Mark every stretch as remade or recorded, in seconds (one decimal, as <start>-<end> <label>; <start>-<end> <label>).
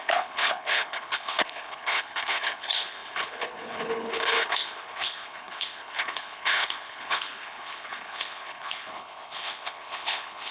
0.0-10.5 remade